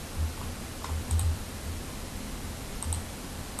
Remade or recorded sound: remade